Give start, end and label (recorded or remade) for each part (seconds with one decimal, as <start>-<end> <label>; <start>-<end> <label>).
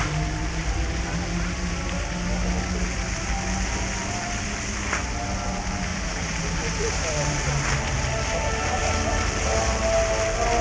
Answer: 0.0-5.9 recorded; 5.9-6.4 remade; 6.4-10.6 recorded